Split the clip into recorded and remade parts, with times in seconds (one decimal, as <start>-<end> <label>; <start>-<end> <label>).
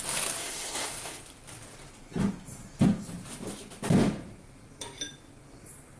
0.0-0.4 recorded; 0.4-1.2 remade; 1.2-6.0 recorded